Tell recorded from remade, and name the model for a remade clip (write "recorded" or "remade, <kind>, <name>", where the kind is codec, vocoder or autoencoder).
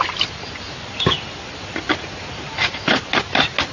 recorded